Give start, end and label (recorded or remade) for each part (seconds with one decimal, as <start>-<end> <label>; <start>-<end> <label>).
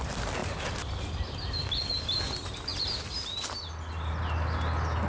0.0-5.1 recorded